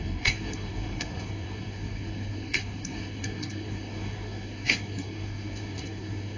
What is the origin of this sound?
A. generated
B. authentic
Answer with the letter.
A